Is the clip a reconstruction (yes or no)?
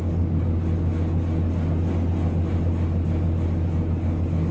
no